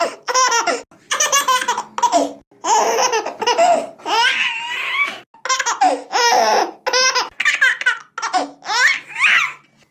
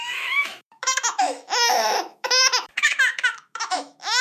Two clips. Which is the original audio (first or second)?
first